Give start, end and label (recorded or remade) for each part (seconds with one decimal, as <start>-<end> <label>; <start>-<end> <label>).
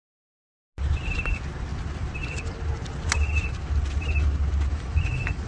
0.0-4.7 recorded; 4.7-5.5 remade